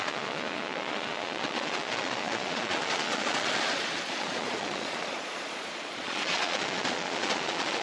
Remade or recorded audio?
remade